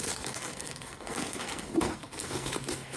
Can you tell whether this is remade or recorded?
remade